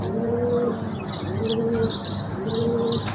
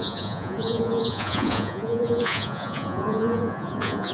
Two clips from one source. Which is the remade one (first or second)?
second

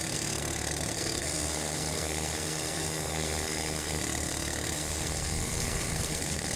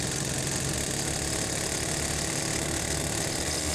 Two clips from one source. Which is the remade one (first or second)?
first